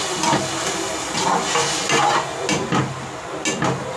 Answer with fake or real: real